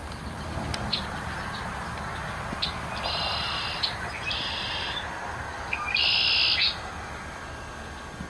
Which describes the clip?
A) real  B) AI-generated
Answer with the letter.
A